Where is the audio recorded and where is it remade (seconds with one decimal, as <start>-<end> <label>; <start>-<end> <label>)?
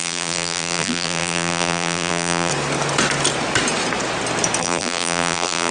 0.0-2.5 remade; 2.5-4.6 recorded; 4.6-5.7 remade